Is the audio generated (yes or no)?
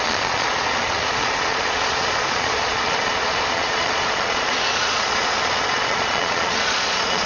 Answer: yes